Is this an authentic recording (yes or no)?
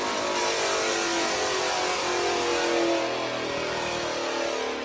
yes